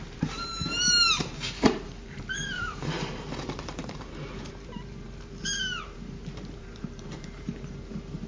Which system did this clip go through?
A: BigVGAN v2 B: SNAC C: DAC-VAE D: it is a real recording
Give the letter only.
A